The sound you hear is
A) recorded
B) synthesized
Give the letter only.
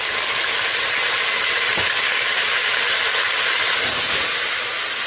A